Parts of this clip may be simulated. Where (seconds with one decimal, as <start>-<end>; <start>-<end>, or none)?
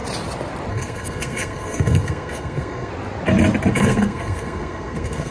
0.7-2.9; 3.7-5.3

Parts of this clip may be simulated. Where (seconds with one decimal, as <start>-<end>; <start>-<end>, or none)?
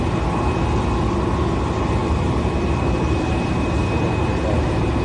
2.0-5.0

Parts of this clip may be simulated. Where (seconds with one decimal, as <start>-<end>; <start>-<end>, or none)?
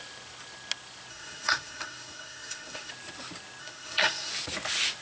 1.1-2.9; 3.6-4.3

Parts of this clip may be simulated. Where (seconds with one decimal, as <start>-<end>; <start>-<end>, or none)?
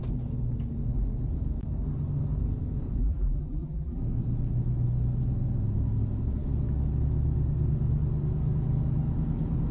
3.0-4.0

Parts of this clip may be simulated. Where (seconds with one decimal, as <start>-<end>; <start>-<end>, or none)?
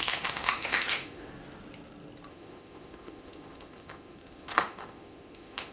0.0-1.3; 2.3-5.7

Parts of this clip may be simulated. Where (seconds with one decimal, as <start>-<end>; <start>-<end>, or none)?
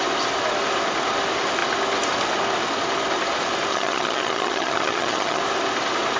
3.7-5.4